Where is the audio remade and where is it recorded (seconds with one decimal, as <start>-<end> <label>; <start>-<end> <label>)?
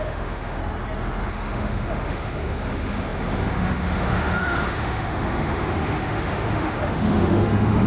0.0-0.6 remade; 0.6-1.3 recorded; 1.3-7.9 remade